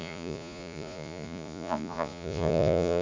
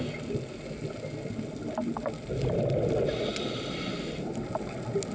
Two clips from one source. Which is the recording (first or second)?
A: second